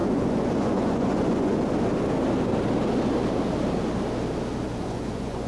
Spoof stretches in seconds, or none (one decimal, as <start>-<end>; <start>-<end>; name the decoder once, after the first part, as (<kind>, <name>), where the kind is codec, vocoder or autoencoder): 0.0-1.5 (vocoder, Vocos); 4.8-5.5